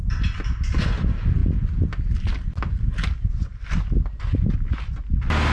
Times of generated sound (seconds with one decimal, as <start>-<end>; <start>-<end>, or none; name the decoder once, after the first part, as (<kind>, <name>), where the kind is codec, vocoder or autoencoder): none

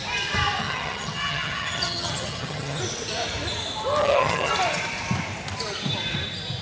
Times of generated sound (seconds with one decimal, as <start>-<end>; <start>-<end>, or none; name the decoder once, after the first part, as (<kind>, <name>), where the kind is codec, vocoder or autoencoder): 0.6-2.8 (vocoder, HiFi-GAN); 4.0-4.5

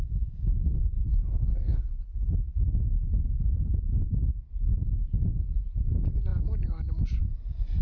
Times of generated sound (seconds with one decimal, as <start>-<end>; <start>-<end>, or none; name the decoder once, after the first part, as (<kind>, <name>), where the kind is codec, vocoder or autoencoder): 1.1-2.3 (codec, HILCodec)

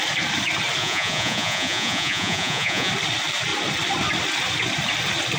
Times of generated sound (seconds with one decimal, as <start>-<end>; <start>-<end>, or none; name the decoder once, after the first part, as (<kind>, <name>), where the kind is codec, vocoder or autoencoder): 0.8-2.9 (vocoder, Vocos)

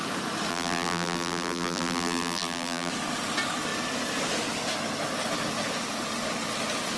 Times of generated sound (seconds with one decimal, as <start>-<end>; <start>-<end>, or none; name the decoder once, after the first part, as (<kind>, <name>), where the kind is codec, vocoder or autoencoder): 0.5-2.9 (vocoder, BigVGAN v2)